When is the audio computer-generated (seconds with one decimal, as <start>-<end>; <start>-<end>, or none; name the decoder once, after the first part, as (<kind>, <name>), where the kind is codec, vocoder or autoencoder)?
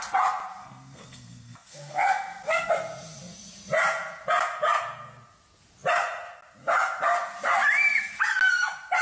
0.6-2.7 (codec, SNAC)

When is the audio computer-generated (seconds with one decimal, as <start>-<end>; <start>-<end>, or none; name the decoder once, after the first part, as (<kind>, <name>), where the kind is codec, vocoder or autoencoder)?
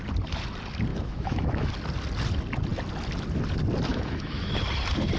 0.9-1.7 (autoencoder, DAC-VAE); 3.9-4.6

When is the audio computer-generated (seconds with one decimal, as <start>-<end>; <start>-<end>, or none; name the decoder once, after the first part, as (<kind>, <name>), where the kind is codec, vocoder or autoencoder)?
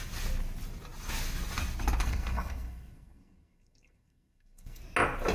2.0-4.8 (codec, SNAC)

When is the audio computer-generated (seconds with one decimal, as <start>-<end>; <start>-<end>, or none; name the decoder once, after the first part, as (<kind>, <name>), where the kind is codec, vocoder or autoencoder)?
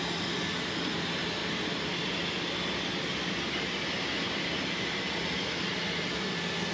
none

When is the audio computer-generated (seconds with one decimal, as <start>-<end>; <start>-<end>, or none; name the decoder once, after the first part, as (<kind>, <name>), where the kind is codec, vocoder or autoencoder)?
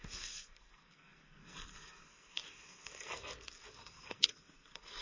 0.0-5.0 (codec, SNAC)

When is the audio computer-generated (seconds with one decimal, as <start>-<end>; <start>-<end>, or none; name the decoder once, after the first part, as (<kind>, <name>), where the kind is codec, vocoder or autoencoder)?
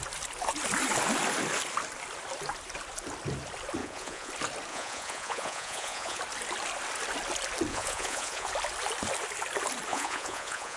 3.8-4.3 (vocoder, Vocos); 4.7-6.2; 7.7-8.5; 9.9-10.8